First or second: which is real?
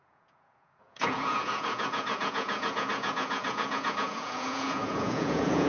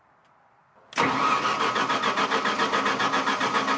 second